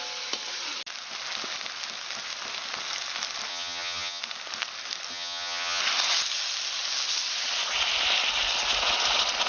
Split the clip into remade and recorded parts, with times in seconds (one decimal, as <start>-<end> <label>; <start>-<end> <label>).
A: 0.0-3.5 recorded; 3.5-4.2 remade; 4.2-5.1 recorded; 5.1-5.8 remade; 5.8-9.5 recorded